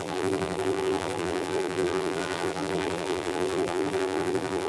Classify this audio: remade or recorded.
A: remade